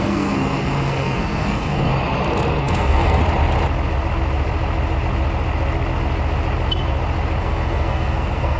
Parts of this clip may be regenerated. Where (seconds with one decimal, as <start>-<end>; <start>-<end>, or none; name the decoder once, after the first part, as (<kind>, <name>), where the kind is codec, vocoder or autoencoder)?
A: 0.0-1.9 (codec, SNAC); 2.6-3.2; 7.4-8.6